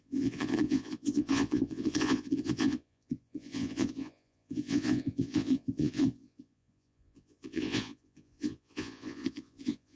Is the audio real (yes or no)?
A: no